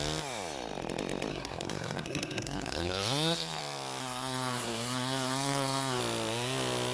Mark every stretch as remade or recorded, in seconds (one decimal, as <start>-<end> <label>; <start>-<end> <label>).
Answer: 0.0-1.3 recorded; 1.3-3.6 remade; 3.6-4.0 recorded; 4.0-6.0 remade; 6.0-6.9 recorded

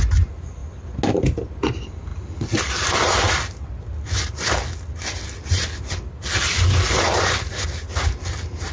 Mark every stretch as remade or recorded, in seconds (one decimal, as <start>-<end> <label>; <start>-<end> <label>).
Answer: 0.0-8.7 recorded

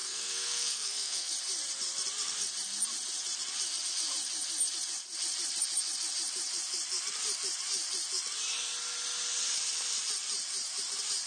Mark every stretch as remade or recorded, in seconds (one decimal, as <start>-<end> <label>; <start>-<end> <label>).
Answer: 0.0-1.3 remade; 1.3-11.3 recorded

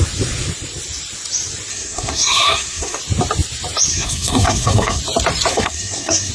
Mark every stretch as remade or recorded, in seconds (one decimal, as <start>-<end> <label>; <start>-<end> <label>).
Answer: 0.0-1.7 recorded; 1.7-3.0 remade; 3.0-3.9 recorded; 3.9-5.0 remade; 5.0-5.5 recorded; 5.5-6.3 remade

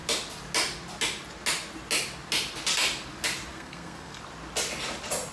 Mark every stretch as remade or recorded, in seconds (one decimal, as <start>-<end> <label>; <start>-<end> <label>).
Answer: 0.0-3.5 recorded; 3.5-4.2 remade; 4.2-5.3 recorded